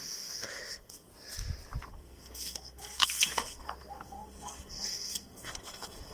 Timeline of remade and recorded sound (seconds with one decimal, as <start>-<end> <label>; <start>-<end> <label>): 0.0-1.1 remade; 1.1-1.9 recorded; 1.9-6.1 remade